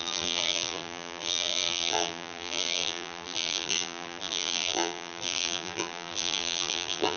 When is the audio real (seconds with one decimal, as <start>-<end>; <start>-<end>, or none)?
none